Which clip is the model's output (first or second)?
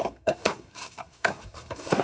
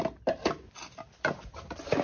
first